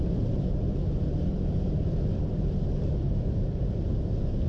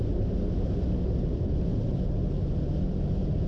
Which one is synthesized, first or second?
first